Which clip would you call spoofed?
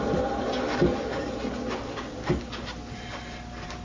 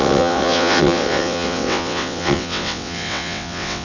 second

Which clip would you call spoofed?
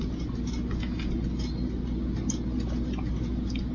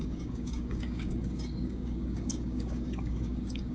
second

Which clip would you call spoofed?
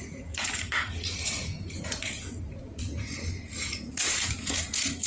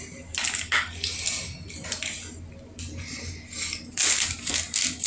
first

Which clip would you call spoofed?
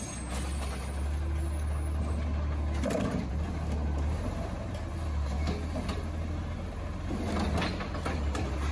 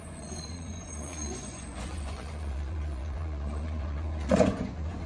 second